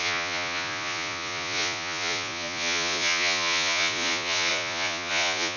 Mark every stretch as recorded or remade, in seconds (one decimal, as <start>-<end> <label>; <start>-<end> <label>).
0.0-5.6 remade